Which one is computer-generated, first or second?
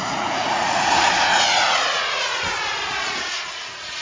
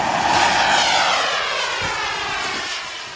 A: first